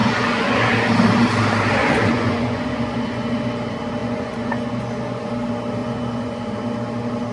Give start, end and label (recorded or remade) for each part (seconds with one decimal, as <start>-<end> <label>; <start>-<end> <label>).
0.0-0.7 remade; 0.7-1.8 recorded; 1.8-3.4 remade; 3.4-4.0 recorded; 4.0-5.3 remade; 5.3-5.8 recorded; 5.8-6.4 remade; 6.4-7.3 recorded